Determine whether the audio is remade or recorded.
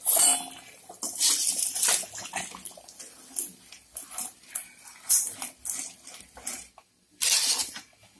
recorded